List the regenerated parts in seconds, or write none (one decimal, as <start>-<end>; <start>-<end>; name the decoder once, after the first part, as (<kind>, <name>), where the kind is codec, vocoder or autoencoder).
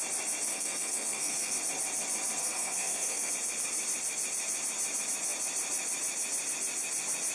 0.5-1.6 (codec, SNAC); 2.4-3.3